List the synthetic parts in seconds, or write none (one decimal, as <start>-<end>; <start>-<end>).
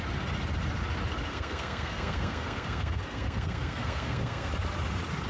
1.3-4.5